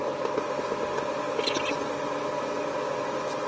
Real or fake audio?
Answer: real